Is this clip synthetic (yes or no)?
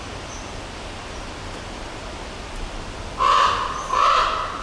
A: no